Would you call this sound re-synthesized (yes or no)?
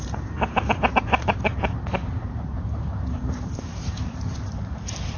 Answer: yes